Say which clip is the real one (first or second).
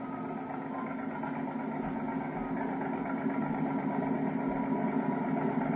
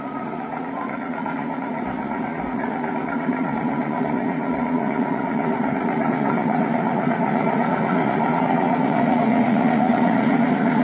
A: first